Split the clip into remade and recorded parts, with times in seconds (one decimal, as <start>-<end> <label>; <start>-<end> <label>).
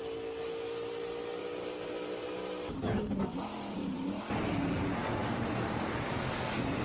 0.0-1.4 recorded; 1.4-4.2 remade; 4.2-5.2 recorded; 5.2-6.2 remade; 6.2-6.8 recorded